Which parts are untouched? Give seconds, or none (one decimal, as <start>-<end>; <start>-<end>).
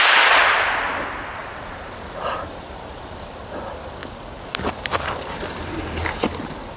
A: 0.0-1.4; 3.4-6.8